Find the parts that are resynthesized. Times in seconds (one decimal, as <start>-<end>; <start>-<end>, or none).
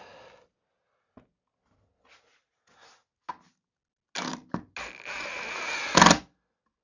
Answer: none